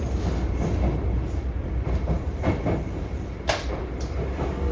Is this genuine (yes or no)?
yes